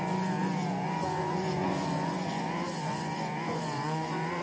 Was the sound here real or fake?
fake